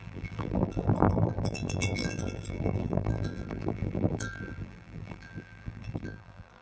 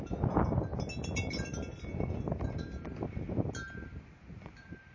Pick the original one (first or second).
second